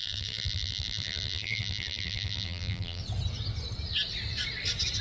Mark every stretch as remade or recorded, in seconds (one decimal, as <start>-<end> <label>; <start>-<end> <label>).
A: 0.0-3.0 remade; 3.0-5.0 recorded